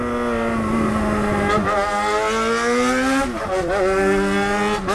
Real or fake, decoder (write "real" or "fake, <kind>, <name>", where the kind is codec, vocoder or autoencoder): real